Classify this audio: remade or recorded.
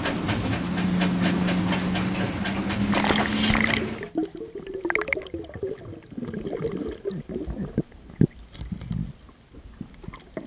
recorded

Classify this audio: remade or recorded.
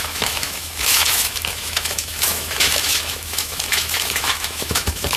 remade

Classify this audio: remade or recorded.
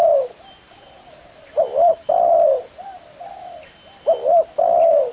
remade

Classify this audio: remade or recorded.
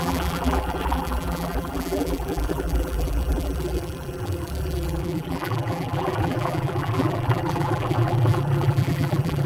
remade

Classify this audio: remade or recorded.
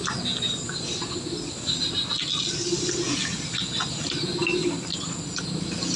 recorded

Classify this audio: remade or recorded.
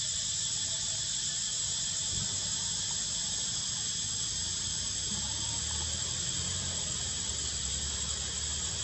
recorded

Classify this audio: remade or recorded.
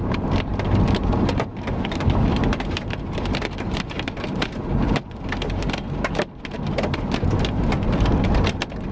remade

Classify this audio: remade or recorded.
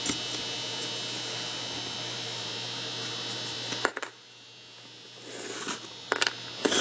recorded